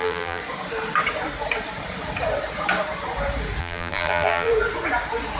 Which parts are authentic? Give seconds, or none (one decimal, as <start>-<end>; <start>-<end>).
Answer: 0.4-3.6; 4.5-5.4